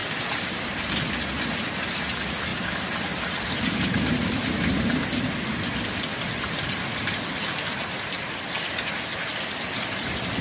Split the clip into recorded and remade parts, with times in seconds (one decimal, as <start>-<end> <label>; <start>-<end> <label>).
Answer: 0.0-1.0 remade; 1.0-2.5 recorded; 2.5-5.0 remade; 5.0-10.4 recorded